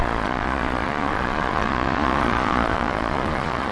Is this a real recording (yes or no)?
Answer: no